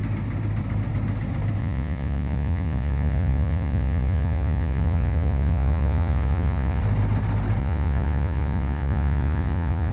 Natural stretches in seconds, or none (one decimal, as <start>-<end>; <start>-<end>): 0.0-1.6; 6.8-7.6